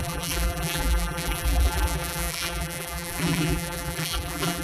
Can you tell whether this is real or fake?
fake